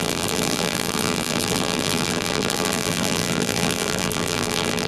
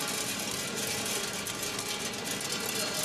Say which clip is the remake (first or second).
first